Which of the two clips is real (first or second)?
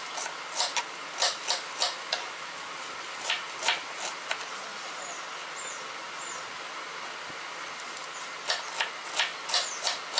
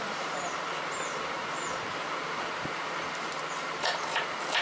first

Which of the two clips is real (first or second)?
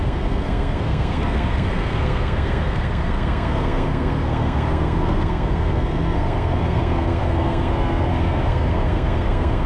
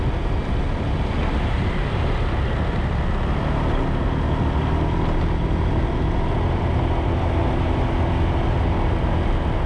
second